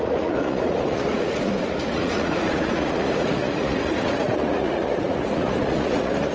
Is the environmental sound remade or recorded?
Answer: remade